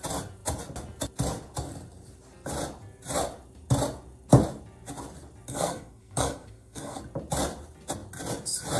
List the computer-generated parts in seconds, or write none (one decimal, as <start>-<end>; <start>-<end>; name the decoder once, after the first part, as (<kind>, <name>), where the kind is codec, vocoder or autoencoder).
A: 5.5-7.0 (codec, SNAC)